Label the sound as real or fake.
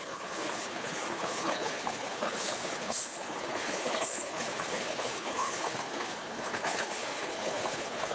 fake